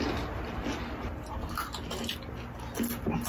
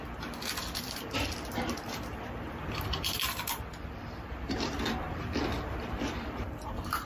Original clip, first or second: first